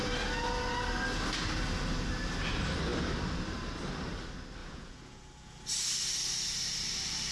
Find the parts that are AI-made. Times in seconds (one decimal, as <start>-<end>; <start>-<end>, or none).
4.6-5.6